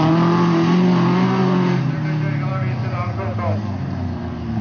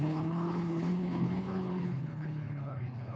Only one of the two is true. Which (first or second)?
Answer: first